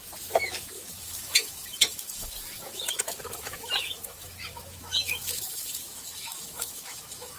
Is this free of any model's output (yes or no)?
no